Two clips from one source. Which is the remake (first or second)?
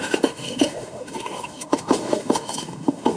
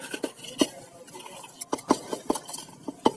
first